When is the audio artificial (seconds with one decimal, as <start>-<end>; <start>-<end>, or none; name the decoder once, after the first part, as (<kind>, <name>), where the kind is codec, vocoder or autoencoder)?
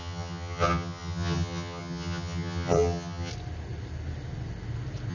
0.0-3.3 (vocoder, HiFi-GAN)